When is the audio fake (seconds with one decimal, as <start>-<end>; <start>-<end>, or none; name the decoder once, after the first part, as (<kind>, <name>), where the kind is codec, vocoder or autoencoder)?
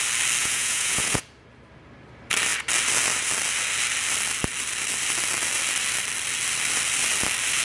0.4-1.2 (vocoder, Vocos)